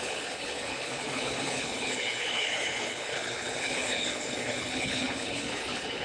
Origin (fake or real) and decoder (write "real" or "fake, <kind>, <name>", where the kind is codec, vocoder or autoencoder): fake, codec, HILCodec